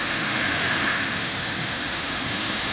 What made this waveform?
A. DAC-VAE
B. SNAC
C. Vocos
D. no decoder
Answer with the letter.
A